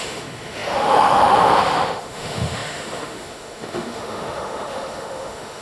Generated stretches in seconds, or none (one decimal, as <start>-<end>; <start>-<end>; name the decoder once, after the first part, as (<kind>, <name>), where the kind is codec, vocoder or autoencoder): 0.0-5.6 (autoencoder, DAC-VAE)